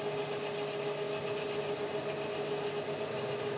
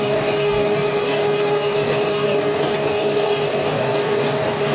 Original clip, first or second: first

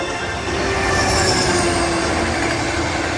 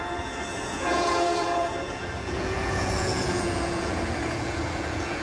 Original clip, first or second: first